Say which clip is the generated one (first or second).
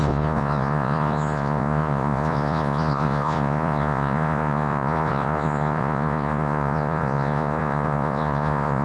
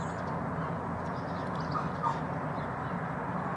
first